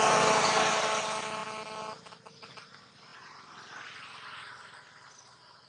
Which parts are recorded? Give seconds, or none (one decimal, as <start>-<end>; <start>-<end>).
0.0-5.7